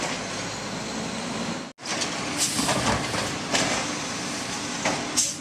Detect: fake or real real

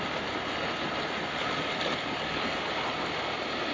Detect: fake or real real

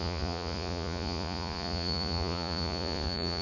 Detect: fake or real fake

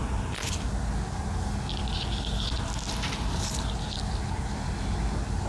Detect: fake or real real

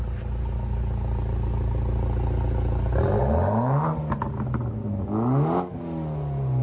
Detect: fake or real real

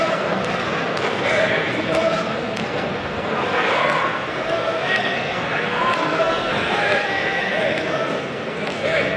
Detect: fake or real fake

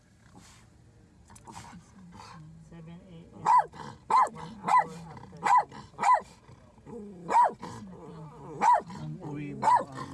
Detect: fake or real real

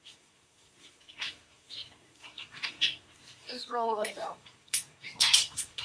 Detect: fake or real fake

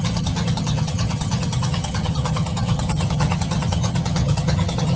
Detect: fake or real fake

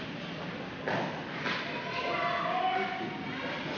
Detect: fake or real real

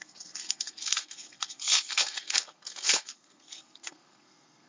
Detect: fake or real fake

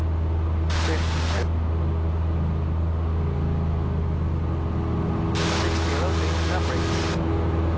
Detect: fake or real real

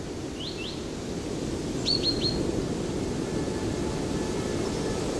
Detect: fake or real real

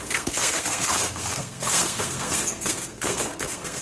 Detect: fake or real fake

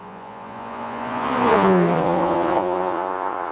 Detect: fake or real fake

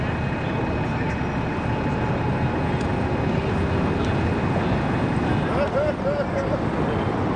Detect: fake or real real